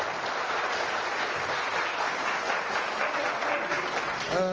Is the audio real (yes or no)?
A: yes